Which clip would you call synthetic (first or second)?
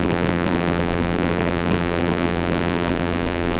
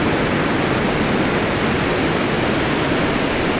first